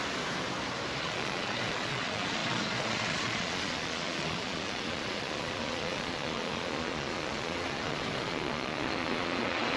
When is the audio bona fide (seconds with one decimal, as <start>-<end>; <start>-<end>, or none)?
0.0-1.0